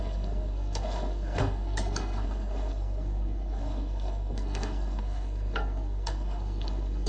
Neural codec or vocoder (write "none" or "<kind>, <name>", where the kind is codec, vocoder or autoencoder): codec, SNAC